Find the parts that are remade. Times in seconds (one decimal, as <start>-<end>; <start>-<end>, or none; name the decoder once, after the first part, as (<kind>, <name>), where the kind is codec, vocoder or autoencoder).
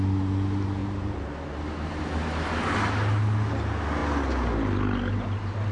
0.8-2.0 (vocoder, BigVGAN v2)